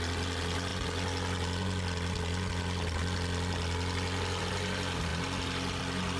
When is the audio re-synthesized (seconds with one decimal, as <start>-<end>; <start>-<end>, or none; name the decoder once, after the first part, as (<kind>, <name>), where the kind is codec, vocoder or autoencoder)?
none